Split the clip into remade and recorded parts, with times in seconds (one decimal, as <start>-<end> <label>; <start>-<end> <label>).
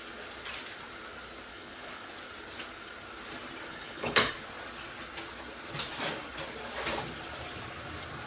0.0-1.5 recorded; 1.5-2.1 remade; 2.1-3.7 recorded; 3.7-4.3 remade; 4.3-8.3 recorded